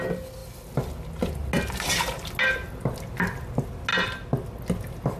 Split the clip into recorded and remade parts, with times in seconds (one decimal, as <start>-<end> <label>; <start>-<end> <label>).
0.0-5.2 recorded